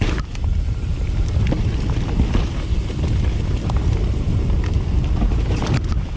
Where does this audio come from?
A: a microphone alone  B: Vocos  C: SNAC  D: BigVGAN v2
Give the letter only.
A